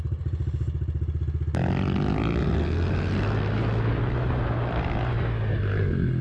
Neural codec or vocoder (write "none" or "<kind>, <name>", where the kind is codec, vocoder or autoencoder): none